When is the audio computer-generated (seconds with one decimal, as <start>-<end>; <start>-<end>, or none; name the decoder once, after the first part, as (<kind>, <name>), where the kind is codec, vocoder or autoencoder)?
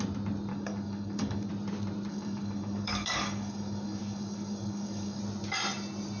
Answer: 0.5-1.5 (codec, DAC); 2.1-5.2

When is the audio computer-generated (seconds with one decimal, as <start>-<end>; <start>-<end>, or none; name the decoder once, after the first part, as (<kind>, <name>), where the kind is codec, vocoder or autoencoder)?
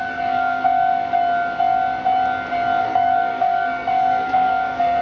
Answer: 0.0-0.9 (codec, SNAC); 2.8-5.0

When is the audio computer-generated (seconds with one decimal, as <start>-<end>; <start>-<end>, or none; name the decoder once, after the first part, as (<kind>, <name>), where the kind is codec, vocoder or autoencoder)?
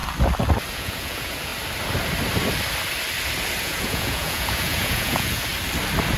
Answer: 0.7-1.5 (vocoder, Vocos); 3.6-5.5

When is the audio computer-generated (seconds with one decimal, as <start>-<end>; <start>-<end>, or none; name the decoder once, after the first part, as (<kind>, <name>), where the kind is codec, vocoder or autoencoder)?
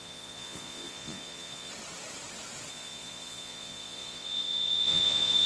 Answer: 0.0-1.7 (vocoder, Vocos); 2.7-5.5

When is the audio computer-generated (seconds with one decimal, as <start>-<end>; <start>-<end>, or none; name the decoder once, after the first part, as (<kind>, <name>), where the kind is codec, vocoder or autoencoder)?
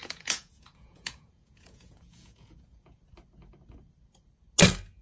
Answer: 0.0-3.0 (vocoder, Vocos)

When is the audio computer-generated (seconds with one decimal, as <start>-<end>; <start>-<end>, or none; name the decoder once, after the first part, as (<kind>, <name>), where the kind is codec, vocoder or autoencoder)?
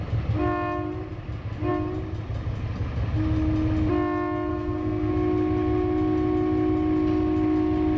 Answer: 4.5-5.1 (codec, SNAC)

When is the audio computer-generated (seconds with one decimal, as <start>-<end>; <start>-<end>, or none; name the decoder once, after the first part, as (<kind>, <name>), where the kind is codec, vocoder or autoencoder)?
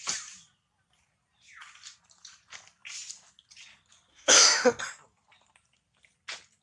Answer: 4.1-4.8 (autoencoder, DAC-VAE)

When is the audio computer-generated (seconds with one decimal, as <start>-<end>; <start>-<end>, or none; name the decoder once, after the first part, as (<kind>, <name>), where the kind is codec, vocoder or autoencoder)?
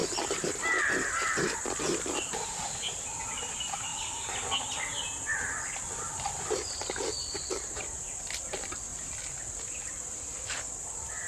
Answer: 1.9-3.9 (vocoder, BigVGAN v2); 5.3-11.3